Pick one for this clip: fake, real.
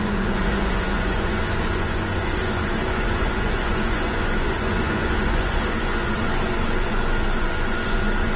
fake